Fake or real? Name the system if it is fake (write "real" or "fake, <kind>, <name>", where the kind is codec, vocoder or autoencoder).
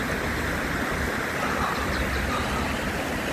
real